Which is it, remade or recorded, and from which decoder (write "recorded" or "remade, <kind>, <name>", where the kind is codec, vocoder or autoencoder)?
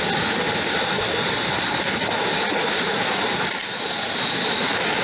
recorded